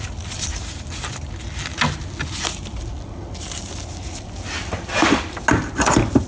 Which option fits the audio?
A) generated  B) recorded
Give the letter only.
B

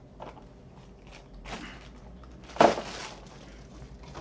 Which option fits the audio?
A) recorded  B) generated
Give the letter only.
A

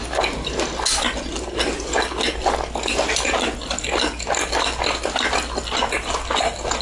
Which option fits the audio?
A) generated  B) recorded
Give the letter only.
B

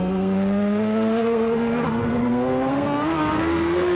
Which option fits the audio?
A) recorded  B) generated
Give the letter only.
B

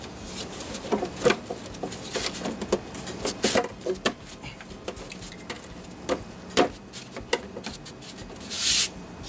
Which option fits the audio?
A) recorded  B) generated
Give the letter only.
A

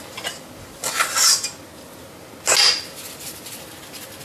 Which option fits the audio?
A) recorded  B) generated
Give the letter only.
A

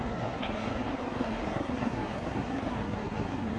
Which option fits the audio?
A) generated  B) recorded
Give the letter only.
A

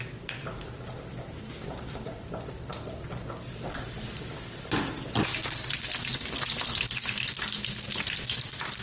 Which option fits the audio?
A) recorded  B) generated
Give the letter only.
A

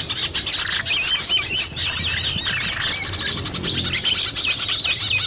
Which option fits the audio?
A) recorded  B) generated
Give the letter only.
A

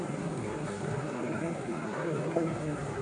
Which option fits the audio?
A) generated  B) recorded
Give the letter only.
A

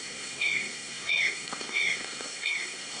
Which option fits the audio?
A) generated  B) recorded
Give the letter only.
A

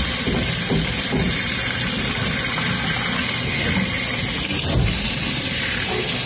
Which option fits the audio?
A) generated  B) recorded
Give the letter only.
B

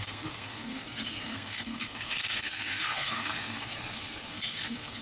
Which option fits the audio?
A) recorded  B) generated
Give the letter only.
B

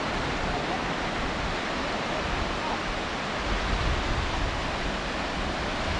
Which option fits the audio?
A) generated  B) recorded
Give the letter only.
B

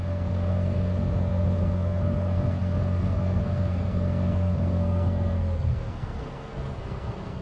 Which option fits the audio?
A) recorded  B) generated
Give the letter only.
B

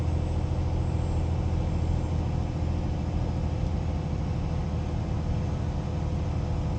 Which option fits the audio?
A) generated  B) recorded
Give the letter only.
B